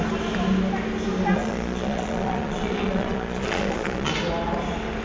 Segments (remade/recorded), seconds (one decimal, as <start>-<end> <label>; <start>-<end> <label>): 0.0-1.3 recorded; 1.3-4.1 remade; 4.1-5.0 recorded